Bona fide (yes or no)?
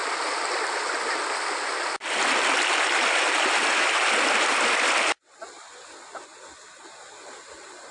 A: yes